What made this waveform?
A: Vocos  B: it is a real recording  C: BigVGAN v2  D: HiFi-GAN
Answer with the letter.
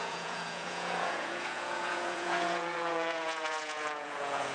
A